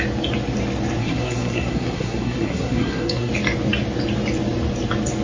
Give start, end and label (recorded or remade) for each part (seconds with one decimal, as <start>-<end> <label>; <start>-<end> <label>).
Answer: 0.0-1.0 recorded; 1.0-3.3 remade; 3.3-5.2 recorded